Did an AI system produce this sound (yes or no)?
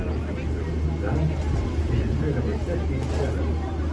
no